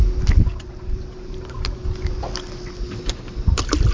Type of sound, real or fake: real